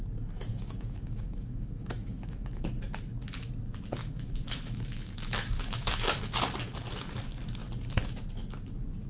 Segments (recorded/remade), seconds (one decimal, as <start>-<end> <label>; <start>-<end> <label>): 0.0-0.5 recorded; 0.5-2.7 remade; 2.7-4.0 recorded; 4.0-6.2 remade; 6.2-9.1 recorded

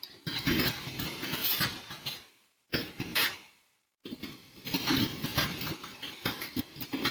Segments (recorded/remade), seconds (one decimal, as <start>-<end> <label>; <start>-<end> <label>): 0.0-1.4 remade; 1.4-2.3 recorded; 2.3-7.1 remade